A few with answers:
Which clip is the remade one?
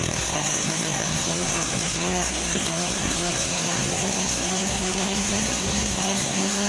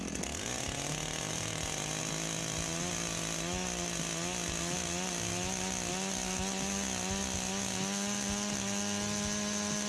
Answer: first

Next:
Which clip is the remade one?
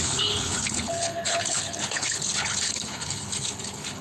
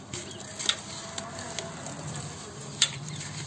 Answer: first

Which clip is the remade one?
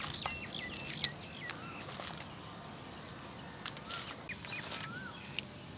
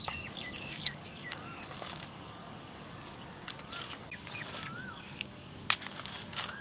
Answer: second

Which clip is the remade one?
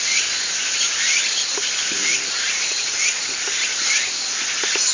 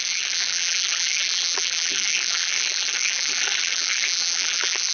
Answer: second